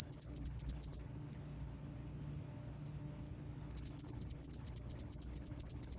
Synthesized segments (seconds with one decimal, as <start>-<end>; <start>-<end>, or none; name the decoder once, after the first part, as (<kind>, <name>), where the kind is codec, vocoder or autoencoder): 0.0-6.0 (codec, HILCodec)